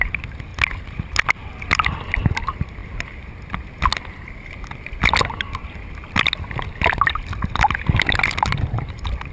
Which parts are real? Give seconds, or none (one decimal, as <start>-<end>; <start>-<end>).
0.0-9.3